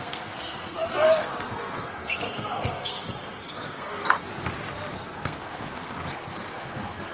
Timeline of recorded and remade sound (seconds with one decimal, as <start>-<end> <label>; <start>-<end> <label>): 0.0-4.3 remade; 4.3-4.9 recorded; 4.9-7.1 remade